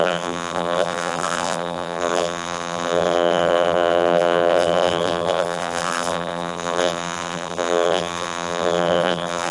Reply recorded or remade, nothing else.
remade